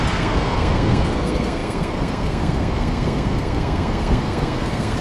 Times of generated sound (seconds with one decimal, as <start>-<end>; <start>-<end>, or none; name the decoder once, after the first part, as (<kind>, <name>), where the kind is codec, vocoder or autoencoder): 0.0-5.0 (codec, SNAC)